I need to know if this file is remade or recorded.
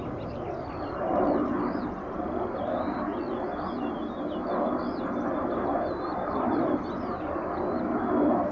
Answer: recorded